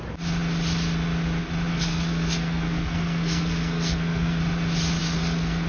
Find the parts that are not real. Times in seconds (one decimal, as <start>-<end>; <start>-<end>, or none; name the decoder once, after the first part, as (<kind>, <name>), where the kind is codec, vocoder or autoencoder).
1.7-4.4 (codec, SNAC); 5.0-5.7